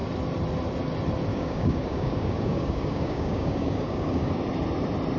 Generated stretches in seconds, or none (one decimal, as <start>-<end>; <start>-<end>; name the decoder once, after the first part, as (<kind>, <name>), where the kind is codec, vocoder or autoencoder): 1.3-4.4 (codec, DAC)